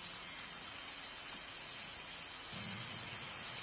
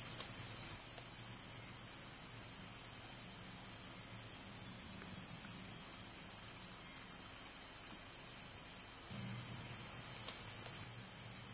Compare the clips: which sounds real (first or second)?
second